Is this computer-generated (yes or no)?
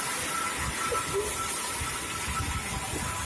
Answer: no